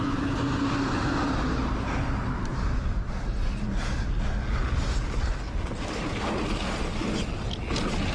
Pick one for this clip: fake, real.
real